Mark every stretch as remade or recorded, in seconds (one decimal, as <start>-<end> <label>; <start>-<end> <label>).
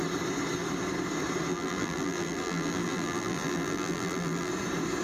0.0-1.5 recorded; 1.5-4.5 remade; 4.5-5.0 recorded